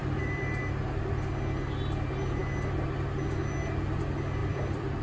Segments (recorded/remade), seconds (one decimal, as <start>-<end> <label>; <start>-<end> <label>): 0.0-0.6 remade; 0.6-4.4 recorded; 4.4-5.0 remade